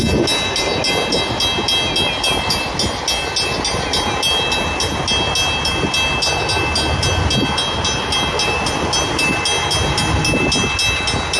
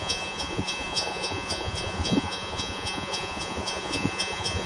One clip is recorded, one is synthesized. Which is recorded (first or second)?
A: first